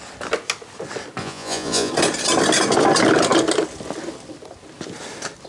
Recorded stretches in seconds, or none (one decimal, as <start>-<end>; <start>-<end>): 0.0-1.2; 1.9-5.5